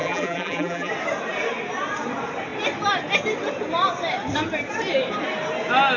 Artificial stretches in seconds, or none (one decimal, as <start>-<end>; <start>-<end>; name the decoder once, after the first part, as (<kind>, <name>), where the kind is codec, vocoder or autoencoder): 0.0-0.9 (vocoder, BigVGAN v2)